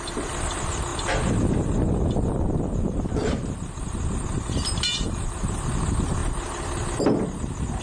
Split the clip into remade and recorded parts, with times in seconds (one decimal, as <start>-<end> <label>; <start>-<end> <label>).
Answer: 0.0-7.8 recorded